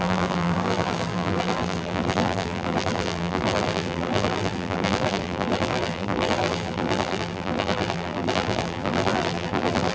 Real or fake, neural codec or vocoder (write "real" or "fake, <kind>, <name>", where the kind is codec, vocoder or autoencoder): fake, vocoder, BigVGAN v2